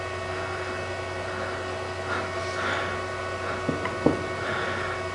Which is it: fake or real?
real